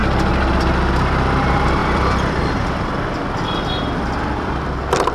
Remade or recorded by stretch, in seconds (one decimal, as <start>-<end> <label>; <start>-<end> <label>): 0.0-1.8 recorded; 1.8-4.5 remade; 4.5-5.1 recorded